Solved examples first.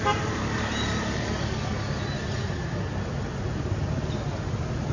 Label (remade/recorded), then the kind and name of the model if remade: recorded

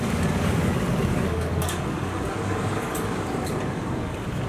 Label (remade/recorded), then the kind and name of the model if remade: remade, codec, DAC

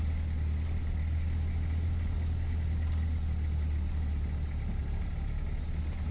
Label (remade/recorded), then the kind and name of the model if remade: recorded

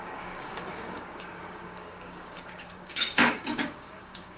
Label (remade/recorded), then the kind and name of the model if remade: remade, codec, DAC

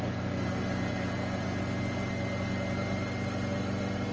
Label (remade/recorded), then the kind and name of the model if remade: recorded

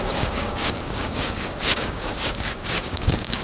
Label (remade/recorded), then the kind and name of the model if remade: remade, codec, DAC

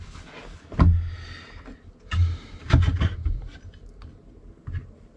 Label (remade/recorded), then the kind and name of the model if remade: recorded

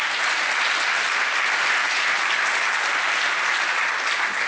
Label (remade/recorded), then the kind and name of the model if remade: recorded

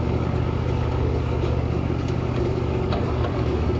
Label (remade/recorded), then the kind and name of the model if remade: remade, codec, DAC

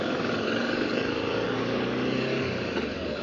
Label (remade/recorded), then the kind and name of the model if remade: remade, codec, DAC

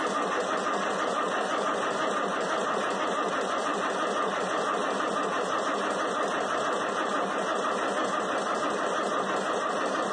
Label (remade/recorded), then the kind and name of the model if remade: recorded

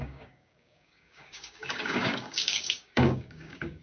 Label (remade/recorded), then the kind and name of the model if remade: remade, codec, DAC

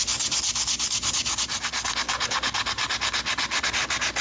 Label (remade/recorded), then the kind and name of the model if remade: recorded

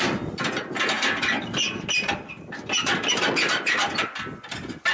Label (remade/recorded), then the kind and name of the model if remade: recorded